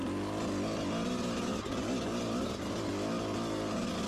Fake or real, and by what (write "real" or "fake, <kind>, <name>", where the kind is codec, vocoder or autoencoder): real